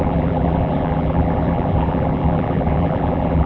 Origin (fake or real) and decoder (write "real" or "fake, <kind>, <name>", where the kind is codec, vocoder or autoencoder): fake, vocoder, BigVGAN v2